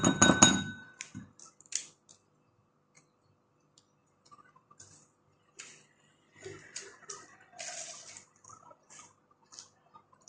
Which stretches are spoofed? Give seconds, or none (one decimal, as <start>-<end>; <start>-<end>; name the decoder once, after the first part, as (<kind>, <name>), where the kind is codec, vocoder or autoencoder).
none